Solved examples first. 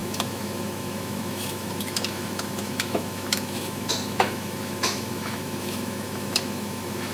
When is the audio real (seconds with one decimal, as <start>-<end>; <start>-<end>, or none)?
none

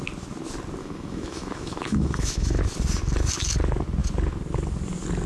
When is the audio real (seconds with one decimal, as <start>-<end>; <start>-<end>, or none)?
0.0-0.8; 2.6-5.3

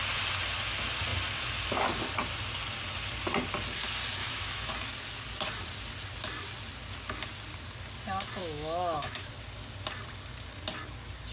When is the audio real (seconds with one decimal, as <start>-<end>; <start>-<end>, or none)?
0.0-4.2; 4.7-8.4; 9.3-11.3

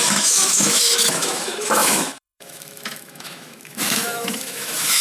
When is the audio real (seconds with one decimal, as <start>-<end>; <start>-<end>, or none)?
none

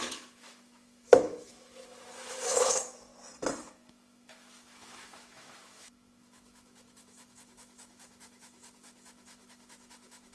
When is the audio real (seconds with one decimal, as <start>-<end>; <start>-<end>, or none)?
3.1-3.6

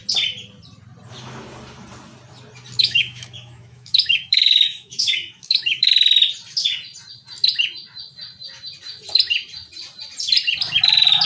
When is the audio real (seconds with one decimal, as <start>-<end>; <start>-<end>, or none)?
0.0-2.8; 5.9-11.3